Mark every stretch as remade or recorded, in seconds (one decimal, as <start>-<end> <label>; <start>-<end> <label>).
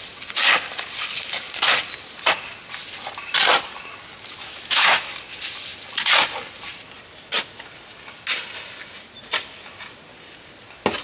0.0-4.4 recorded; 4.4-5.1 remade; 5.1-11.0 recorded